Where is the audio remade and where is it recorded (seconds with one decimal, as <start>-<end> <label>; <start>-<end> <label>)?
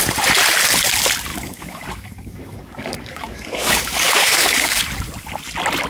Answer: 0.0-1.3 recorded; 1.3-4.8 remade; 4.8-5.9 recorded